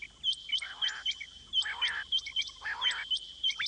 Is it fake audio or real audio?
real